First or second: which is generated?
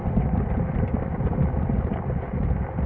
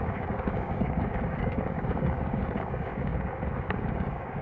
second